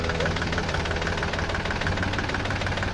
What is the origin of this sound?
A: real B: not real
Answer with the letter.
B